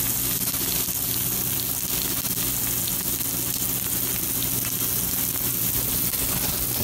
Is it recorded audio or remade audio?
recorded